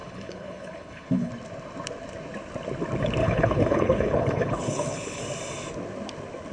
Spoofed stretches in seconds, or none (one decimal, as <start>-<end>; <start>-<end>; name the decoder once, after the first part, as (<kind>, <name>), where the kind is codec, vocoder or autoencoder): 0.0-1.3 (codec, HILCodec); 3.2-5.2